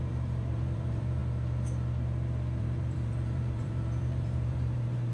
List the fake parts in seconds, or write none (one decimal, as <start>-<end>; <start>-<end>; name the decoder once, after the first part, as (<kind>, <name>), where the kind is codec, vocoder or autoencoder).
0.0-1.2 (vocoder, BigVGAN v2); 2.6-5.1